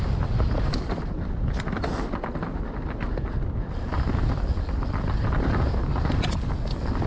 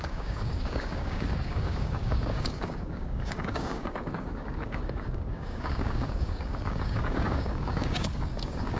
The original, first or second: first